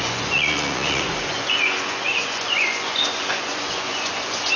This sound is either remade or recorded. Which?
remade